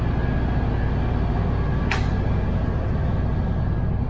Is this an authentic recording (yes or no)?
yes